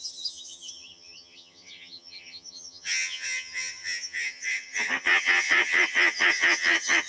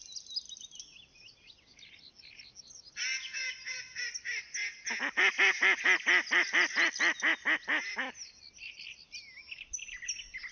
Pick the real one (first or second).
second